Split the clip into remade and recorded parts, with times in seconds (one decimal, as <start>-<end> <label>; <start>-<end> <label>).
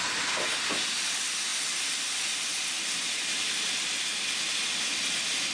0.0-5.5 recorded